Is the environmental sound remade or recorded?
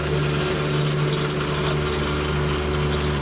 recorded